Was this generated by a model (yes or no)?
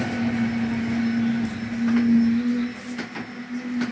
no